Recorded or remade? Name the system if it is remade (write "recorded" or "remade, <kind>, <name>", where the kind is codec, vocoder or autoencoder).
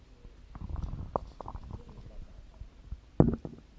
recorded